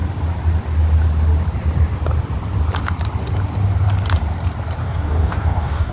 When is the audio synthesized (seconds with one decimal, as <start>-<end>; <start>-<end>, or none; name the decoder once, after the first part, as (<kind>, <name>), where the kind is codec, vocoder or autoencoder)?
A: 4.8-5.9 (codec, DAC)